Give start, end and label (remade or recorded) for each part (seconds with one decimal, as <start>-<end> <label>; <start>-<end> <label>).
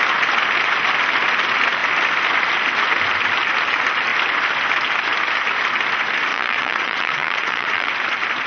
0.0-6.3 recorded; 6.3-7.9 remade; 7.9-8.5 recorded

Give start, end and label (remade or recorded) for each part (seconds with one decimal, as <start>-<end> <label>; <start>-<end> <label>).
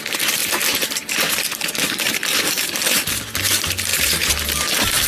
0.0-0.4 recorded; 0.4-1.1 remade; 1.1-3.9 recorded; 3.9-4.4 remade; 4.4-5.1 recorded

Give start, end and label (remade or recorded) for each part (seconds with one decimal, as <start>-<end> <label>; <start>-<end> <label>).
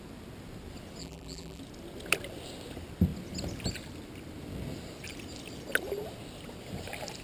0.0-1.0 recorded; 1.0-1.6 remade; 1.6-7.2 recorded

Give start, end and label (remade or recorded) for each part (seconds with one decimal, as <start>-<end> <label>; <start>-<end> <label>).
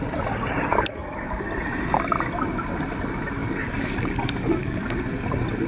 0.0-0.7 recorded; 0.7-1.4 remade; 1.4-3.4 recorded; 3.4-5.1 remade; 5.1-5.7 recorded